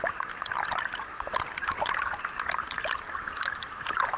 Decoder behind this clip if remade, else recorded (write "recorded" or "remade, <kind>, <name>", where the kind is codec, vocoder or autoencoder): recorded